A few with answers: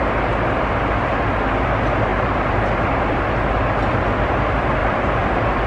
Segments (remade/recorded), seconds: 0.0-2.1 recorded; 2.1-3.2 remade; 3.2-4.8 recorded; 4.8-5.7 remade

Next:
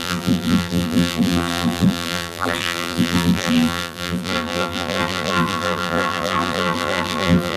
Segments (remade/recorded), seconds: 0.0-7.6 remade

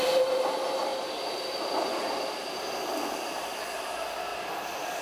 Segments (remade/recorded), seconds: 0.0-0.9 recorded; 0.9-3.9 remade; 3.9-4.3 recorded; 4.3-5.0 remade

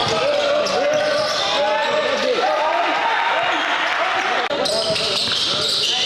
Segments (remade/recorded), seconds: 0.0-1.8 recorded; 1.8-3.5 remade; 3.5-4.1 recorded; 4.1-6.1 remade